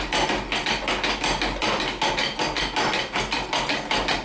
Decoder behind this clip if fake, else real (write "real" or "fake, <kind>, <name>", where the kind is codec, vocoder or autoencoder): real